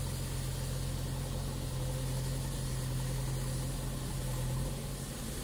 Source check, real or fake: real